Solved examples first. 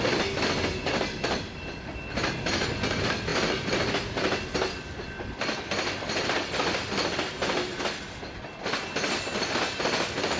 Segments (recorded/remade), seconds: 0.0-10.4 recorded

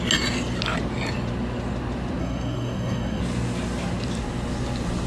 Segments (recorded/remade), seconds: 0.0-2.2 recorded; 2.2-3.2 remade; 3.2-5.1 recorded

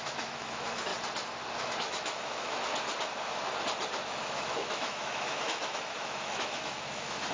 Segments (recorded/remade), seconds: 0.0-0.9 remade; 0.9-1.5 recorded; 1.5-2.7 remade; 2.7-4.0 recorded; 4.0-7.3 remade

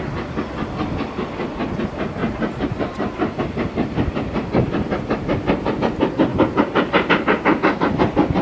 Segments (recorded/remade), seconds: 0.0-2.2 recorded; 2.2-5.8 remade; 5.8-6.3 recorded; 6.3-7.1 remade; 7.1-8.4 recorded

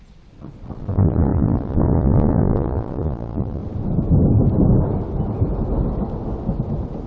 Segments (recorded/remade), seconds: 0.0-3.6 remade; 3.6-7.1 recorded

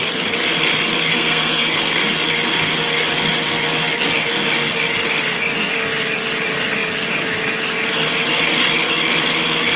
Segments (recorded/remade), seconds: 0.0-1.1 recorded; 1.1-2.0 remade; 2.0-9.8 recorded